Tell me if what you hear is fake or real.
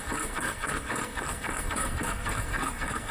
fake